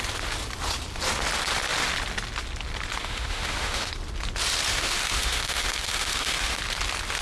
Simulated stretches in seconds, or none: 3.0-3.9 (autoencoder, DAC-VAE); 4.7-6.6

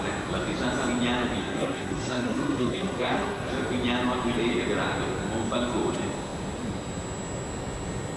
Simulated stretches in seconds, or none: 1.4-3.5 (codec, SNAC)